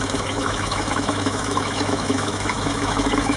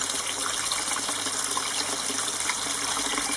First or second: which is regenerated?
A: first